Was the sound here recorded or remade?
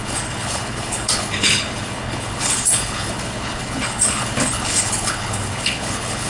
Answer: remade